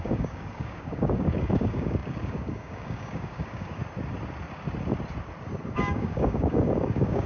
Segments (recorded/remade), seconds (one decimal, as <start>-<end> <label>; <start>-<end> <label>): 0.0-3.8 remade; 3.8-5.7 recorded; 5.7-7.3 remade